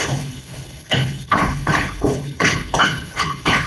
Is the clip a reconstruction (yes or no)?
yes